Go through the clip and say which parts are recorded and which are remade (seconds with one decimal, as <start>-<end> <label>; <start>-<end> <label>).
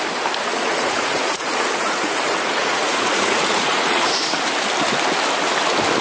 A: 0.0-0.5 recorded; 0.5-4.1 remade; 4.1-6.0 recorded